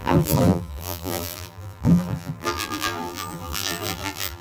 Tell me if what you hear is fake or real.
fake